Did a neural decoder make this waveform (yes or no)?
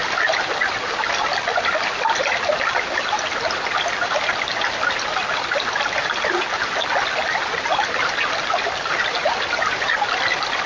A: no